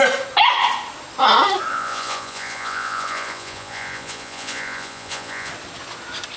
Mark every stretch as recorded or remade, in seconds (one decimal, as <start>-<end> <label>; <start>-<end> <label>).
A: 0.0-1.7 recorded; 1.7-5.5 remade; 5.5-6.4 recorded